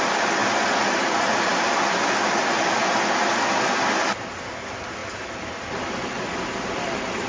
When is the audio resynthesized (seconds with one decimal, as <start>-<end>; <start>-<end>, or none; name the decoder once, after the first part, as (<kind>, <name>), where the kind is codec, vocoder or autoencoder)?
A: 5.0-6.3 (vocoder, BigVGAN v2)